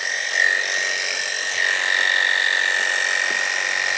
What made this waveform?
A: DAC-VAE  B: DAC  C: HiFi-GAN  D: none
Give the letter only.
D